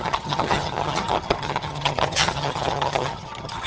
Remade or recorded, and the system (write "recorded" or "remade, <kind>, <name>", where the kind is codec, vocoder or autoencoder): remade, vocoder, HiFi-GAN